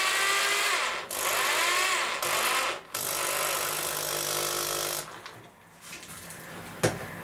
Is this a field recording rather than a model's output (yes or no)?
yes